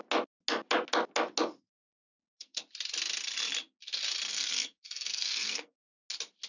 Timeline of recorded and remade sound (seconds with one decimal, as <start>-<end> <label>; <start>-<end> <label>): 0.0-2.1 recorded; 2.1-2.6 remade; 2.6-4.3 recorded; 4.3-6.0 remade; 6.0-6.5 recorded